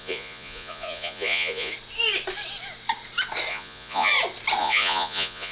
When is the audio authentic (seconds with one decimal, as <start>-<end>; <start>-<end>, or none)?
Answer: 1.7-3.5; 4.1-4.6